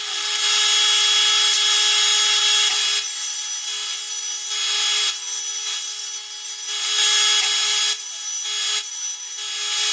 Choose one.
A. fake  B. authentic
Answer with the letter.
B